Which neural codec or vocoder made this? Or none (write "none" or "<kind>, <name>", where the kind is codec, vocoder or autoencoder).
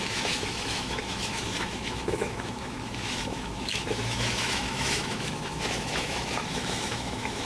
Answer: autoencoder, DAC-VAE